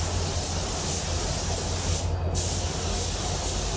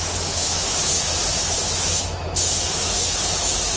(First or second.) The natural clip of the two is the first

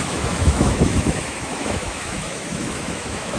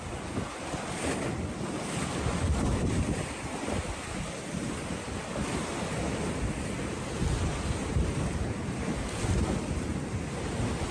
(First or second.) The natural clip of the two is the second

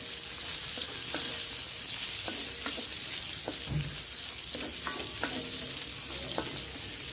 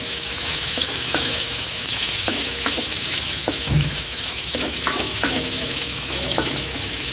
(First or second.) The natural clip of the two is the first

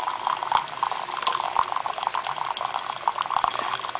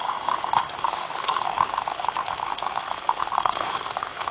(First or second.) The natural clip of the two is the first